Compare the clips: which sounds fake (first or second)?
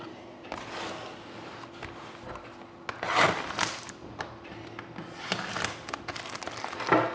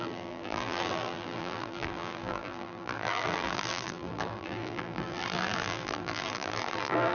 second